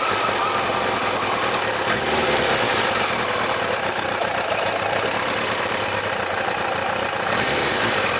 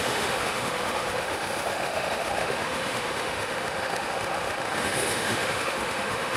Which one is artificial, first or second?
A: second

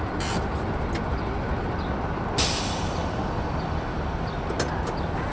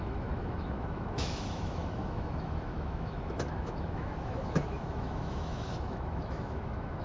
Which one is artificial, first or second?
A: second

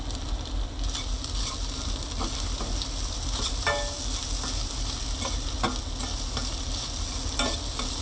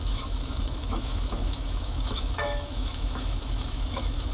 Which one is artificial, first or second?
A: second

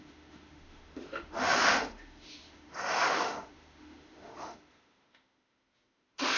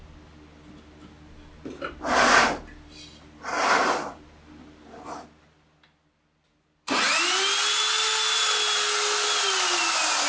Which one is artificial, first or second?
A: first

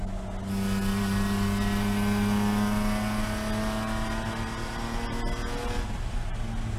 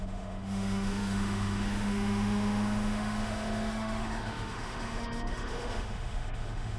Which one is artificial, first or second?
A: second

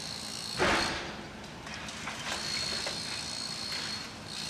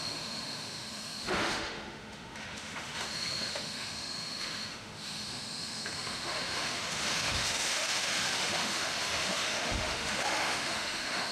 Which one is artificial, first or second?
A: second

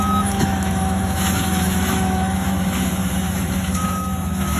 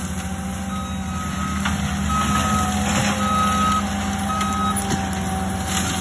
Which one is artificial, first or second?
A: first